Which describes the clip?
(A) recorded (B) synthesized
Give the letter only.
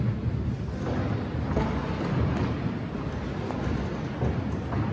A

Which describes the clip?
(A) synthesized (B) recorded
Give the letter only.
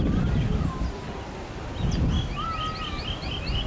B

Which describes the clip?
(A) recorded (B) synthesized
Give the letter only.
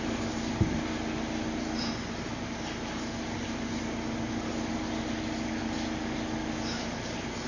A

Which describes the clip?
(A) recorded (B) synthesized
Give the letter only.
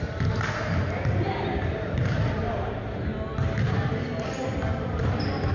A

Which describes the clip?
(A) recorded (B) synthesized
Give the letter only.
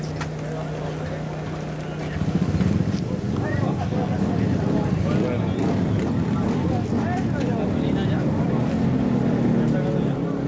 A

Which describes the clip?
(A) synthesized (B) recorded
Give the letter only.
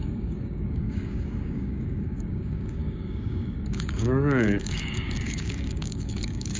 A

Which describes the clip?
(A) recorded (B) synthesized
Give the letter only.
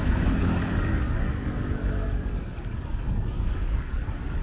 B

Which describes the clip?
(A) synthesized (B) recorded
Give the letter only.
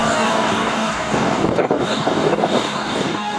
A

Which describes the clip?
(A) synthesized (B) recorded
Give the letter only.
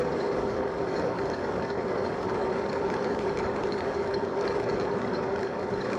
A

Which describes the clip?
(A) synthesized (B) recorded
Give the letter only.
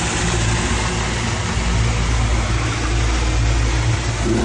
B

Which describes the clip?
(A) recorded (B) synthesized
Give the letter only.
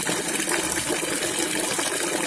A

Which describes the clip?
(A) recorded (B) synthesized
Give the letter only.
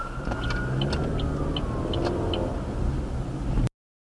A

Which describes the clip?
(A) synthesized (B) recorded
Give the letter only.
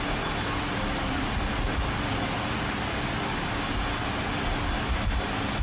B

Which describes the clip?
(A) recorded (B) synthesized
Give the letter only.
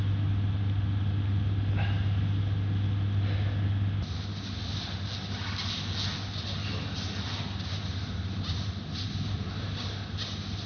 A